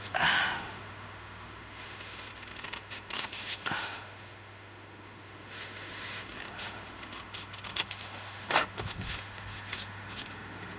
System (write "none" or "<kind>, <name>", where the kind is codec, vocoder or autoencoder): autoencoder, DAC-VAE